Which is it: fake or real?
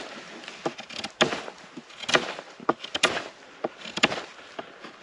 real